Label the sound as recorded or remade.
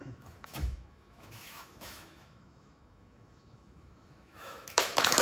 remade